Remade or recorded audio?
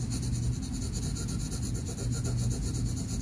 recorded